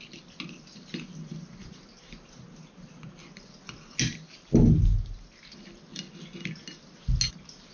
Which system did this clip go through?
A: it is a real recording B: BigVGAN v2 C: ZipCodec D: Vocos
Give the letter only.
A